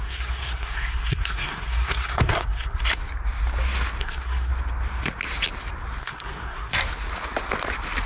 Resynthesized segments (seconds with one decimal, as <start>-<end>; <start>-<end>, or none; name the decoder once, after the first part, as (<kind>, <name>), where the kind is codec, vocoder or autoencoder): 0.0-2.8 (codec, SNAC); 4.0-4.5; 6.0-6.7